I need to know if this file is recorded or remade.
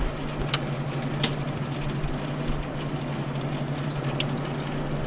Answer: recorded